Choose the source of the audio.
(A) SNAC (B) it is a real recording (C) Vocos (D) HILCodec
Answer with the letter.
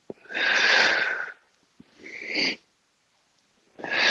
B